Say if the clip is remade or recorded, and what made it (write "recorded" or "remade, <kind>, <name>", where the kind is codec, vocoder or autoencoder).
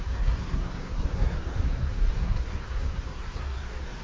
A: remade, codec, SNAC